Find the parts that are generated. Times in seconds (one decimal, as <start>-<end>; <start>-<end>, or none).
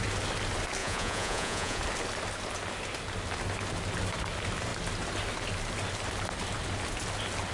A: 0.8-1.8